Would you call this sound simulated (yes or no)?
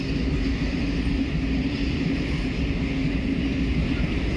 no